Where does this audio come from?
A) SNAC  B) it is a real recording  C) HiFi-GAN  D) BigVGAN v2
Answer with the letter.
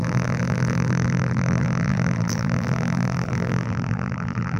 D